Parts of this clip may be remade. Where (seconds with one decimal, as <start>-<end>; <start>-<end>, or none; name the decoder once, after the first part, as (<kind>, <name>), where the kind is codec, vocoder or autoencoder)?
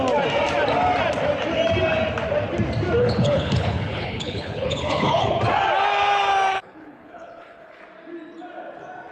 3.0-5.4 (codec, HILCodec); 6.5-7.8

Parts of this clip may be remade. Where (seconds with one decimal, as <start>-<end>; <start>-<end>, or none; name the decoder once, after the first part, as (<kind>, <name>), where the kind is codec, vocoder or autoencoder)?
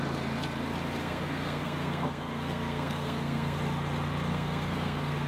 1.0-3.6 (codec, SNAC); 4.3-5.3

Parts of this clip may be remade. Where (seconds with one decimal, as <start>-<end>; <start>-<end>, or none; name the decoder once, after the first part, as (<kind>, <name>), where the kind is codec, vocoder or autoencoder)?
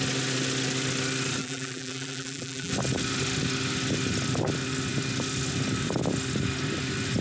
1.4-2.7 (vocoder, BigVGAN v2)